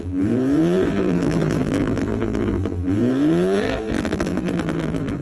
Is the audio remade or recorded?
remade